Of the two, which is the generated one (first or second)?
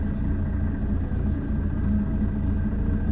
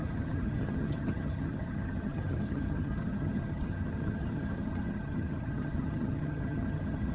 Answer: second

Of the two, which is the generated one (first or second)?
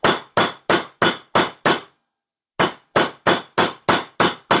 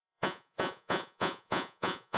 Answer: second